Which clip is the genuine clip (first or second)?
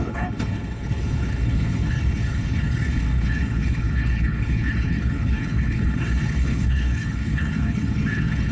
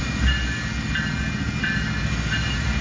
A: second